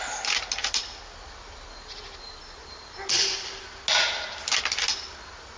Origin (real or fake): real